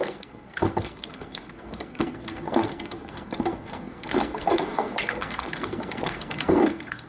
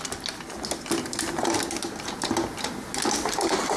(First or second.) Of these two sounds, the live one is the second